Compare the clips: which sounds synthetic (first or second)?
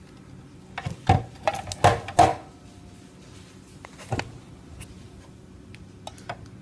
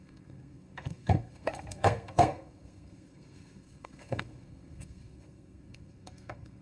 second